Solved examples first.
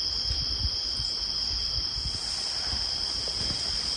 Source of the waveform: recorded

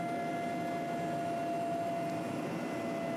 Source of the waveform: recorded